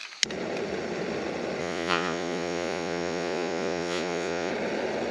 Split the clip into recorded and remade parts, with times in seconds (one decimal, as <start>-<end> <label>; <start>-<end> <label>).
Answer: 0.0-1.6 recorded; 1.6-4.5 remade; 4.5-5.1 recorded